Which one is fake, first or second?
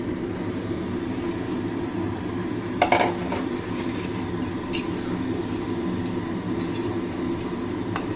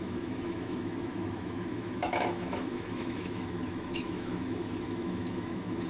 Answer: second